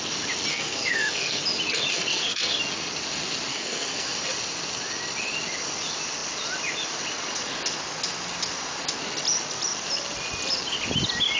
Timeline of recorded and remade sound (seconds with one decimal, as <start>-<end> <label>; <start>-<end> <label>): 0.0-0.5 recorded; 0.5-1.4 remade; 1.4-1.9 recorded; 1.9-2.6 remade; 2.6-3.5 recorded; 3.5-4.2 remade; 4.2-11.4 recorded